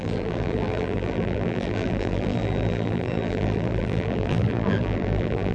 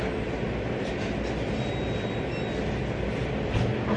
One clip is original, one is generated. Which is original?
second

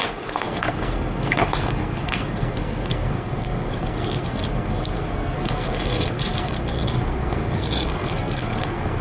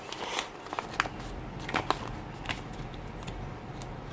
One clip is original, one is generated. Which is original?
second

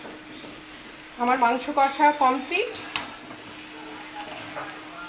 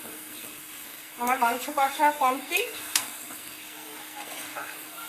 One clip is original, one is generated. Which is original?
first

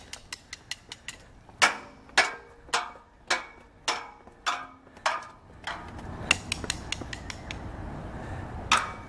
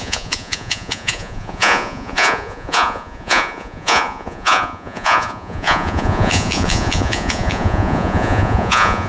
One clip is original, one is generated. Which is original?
first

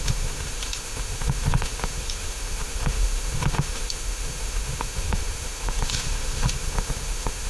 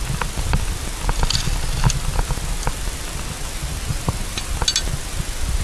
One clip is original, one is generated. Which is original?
second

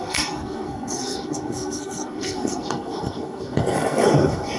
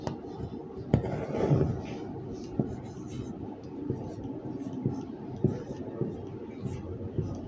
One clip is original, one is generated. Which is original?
second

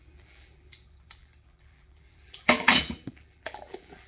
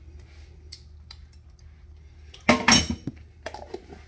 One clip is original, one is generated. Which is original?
second